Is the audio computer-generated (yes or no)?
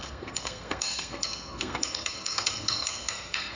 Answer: yes